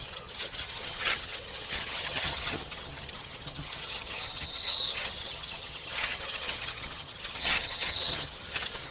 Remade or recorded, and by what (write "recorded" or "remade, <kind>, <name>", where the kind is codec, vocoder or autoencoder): remade, vocoder, HiFi-GAN